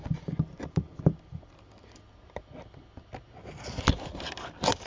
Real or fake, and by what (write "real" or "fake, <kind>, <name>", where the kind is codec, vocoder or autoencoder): real